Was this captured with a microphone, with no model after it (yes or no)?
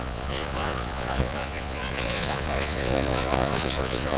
no